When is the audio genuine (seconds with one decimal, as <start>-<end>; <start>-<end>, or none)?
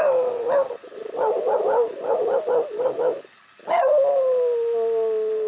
0.0-5.5